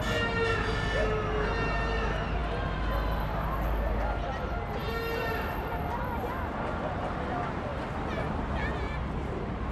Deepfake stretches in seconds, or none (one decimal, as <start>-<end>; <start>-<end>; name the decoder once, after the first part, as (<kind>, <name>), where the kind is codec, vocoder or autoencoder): none